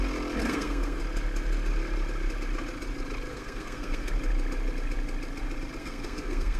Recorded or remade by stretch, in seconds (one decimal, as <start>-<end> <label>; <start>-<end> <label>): 0.0-0.4 recorded; 0.4-1.0 remade; 1.0-3.3 recorded; 3.3-4.1 remade; 4.1-5.8 recorded; 5.8-6.6 remade

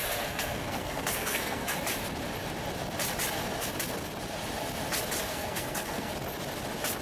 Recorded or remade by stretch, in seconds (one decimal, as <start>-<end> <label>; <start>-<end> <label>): 0.0-1.8 remade; 1.8-5.3 recorded; 5.3-6.1 remade; 6.1-7.0 recorded

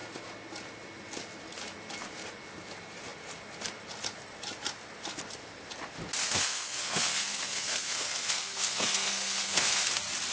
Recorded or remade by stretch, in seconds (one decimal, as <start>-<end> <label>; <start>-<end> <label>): 0.0-6.2 recorded; 6.2-9.9 remade; 9.9-10.3 recorded

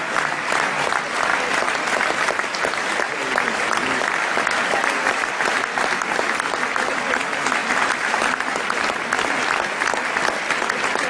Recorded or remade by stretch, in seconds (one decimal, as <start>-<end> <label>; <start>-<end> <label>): 0.0-11.1 recorded

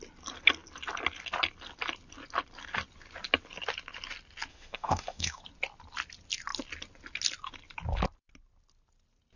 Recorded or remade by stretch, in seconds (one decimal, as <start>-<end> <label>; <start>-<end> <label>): 0.0-4.5 recorded; 4.5-5.4 remade; 5.4-9.4 recorded

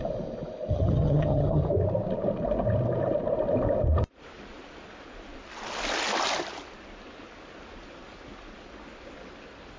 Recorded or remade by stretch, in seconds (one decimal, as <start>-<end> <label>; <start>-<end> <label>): 0.0-0.7 recorded; 0.7-1.6 remade; 1.6-9.8 recorded

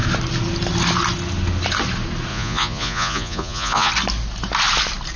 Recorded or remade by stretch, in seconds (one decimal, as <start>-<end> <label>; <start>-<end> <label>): 0.0-2.3 recorded; 2.3-3.9 remade; 3.9-5.2 recorded